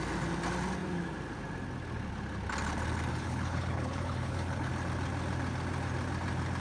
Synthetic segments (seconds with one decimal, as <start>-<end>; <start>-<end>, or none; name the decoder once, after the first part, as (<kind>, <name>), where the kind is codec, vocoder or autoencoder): 3.1-4.7 (codec, HILCodec)